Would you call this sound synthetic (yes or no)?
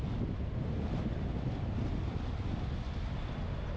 no